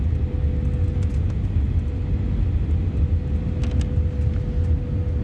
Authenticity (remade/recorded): recorded